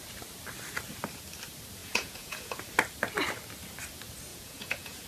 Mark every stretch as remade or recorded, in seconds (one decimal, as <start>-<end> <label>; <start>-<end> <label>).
0.0-1.8 recorded; 1.8-2.6 remade; 2.6-4.3 recorded; 4.3-5.1 remade